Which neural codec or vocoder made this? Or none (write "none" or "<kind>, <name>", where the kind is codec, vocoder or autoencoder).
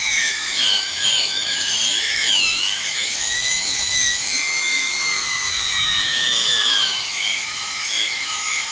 autoencoder, DAC-VAE